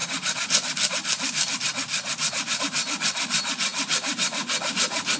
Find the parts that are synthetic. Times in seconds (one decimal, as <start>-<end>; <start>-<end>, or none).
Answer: none